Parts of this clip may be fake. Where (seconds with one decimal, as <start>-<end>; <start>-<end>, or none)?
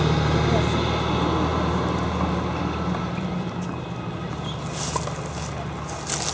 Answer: none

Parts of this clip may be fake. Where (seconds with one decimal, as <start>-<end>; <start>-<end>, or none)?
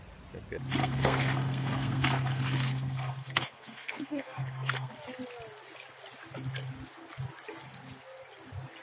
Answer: 0.8-4.9